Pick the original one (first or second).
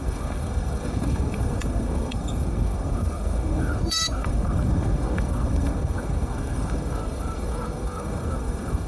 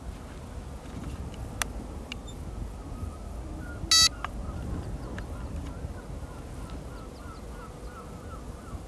second